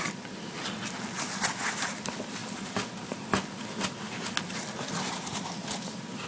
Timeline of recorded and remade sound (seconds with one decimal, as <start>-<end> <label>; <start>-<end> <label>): 0.0-6.3 recorded